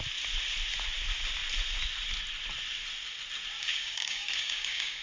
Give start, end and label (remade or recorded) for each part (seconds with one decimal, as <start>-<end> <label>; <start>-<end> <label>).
0.0-3.6 recorded; 3.6-5.0 remade

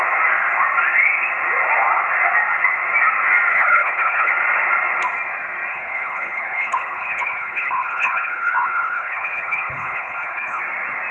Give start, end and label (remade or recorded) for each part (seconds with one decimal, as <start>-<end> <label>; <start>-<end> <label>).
0.0-3.5 recorded; 3.5-4.3 remade; 4.3-5.7 recorded; 5.7-10.6 remade; 10.6-11.1 recorded

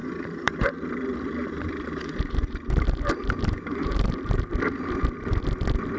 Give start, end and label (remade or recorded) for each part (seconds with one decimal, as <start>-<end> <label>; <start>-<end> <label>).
0.0-0.7 remade; 0.7-1.4 recorded; 1.4-4.5 remade; 4.5-6.0 recorded

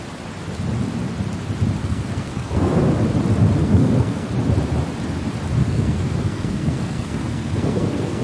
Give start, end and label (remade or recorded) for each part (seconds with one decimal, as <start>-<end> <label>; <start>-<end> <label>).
0.0-1.8 recorded; 1.8-2.8 remade; 2.8-3.6 recorded; 3.6-4.3 remade; 4.3-5.6 recorded; 5.6-8.2 remade

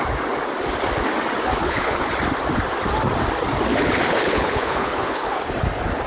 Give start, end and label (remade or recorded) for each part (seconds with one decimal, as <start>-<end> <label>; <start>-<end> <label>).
0.0-1.6 recorded; 1.6-2.1 remade; 2.1-3.7 recorded; 3.7-5.5 remade; 5.5-6.1 recorded